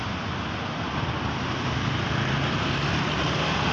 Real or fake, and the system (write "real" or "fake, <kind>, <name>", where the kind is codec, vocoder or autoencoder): fake, vocoder, BigVGAN v2